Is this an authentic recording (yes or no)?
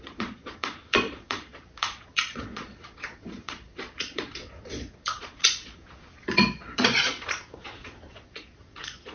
no